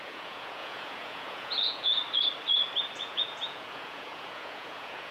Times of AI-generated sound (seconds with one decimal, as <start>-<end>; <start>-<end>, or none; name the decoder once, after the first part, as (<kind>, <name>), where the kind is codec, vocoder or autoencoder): 0.0-2.0 (vocoder, Vocos); 3.0-5.1